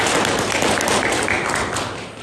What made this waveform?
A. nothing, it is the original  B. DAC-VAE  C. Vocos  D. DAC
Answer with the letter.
A